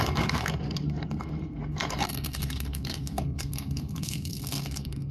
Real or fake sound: fake